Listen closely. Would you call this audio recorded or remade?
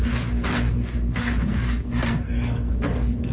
remade